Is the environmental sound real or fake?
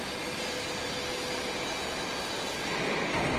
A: real